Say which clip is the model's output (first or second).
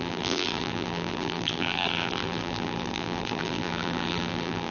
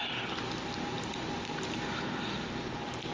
first